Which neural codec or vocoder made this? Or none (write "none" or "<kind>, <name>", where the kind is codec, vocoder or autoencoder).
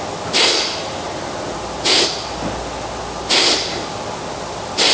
none